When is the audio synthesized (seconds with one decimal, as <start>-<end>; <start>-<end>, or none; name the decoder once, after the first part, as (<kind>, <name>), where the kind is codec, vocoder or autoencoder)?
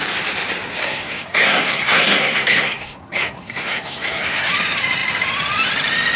0.8-4.5 (codec, SNAC)